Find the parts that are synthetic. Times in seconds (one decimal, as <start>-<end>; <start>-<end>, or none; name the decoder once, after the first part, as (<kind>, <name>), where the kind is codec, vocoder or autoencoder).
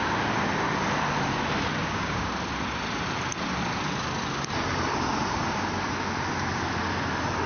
1.8-2.3 (codec, DAC)